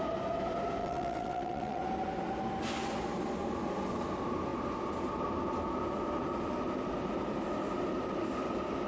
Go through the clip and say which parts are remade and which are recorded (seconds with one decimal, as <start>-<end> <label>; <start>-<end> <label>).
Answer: 0.0-0.8 recorded; 0.8-1.8 remade; 1.8-8.9 recorded